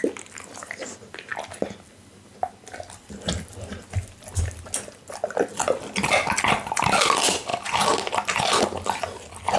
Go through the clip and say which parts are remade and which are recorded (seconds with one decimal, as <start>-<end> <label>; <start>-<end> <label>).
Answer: 0.0-9.6 recorded

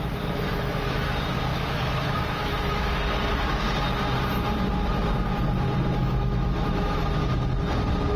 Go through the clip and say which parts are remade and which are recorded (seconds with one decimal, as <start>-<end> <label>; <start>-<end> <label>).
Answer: 0.0-1.5 recorded; 1.5-3.0 remade; 3.0-6.0 recorded; 6.0-7.1 remade; 7.1-8.2 recorded

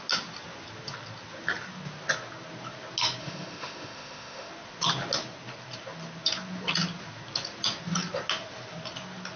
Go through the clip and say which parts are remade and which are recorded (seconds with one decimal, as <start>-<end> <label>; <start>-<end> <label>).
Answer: 0.0-3.2 recorded; 3.2-4.5 remade; 4.5-9.4 recorded

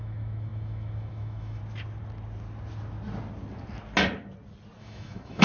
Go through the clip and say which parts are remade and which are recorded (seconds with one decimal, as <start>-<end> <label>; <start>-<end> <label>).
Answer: 0.0-1.6 remade; 1.6-4.8 recorded; 4.8-5.4 remade